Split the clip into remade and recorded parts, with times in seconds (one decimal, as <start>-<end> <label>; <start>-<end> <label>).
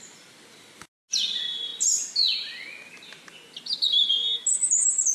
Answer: 0.0-5.1 recorded